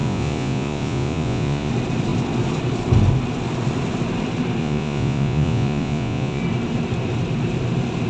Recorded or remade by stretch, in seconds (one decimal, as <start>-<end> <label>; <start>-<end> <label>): 0.0-1.7 remade; 1.7-4.6 recorded; 4.6-6.4 remade; 6.4-8.1 recorded

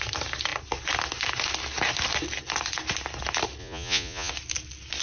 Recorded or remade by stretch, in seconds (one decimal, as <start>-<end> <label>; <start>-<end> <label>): 0.0-3.6 recorded; 3.6-4.3 remade; 4.3-5.0 recorded

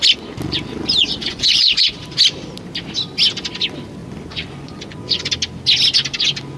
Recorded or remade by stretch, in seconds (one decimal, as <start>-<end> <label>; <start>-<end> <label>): 0.0-1.0 recorded; 1.0-2.0 remade; 2.0-4.0 recorded; 4.0-5.3 remade; 5.3-6.6 recorded